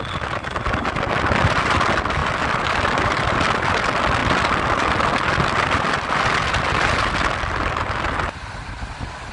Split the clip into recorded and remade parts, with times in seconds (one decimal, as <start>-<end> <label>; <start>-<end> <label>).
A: 0.0-9.3 recorded

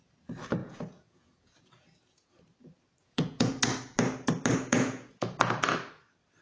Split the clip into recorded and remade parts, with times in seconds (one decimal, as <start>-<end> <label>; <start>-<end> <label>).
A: 0.0-0.6 recorded; 0.6-2.4 remade; 2.4-3.0 recorded; 3.0-3.6 remade; 3.6-4.5 recorded; 4.5-5.4 remade; 5.4-6.4 recorded